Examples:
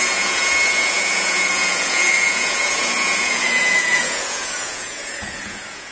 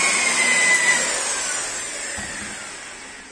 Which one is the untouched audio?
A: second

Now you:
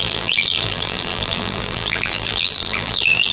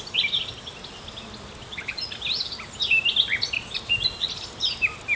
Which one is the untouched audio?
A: second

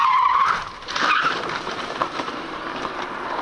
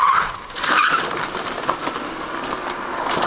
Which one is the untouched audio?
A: second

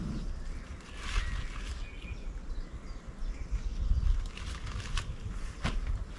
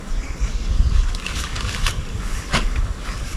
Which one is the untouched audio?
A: first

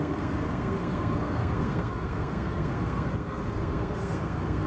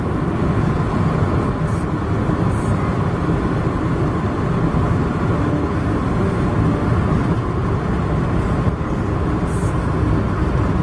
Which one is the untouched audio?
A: second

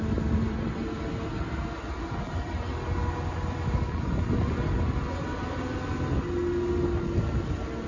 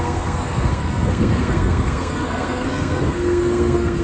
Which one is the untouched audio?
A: first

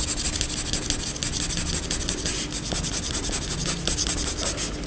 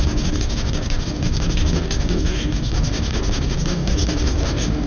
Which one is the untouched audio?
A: first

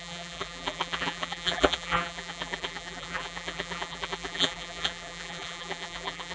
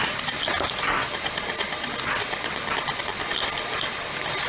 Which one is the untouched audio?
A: second